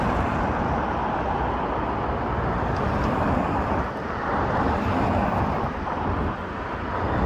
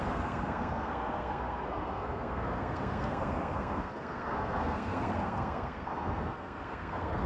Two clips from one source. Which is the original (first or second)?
first